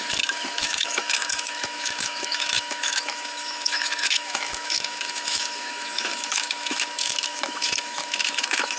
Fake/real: fake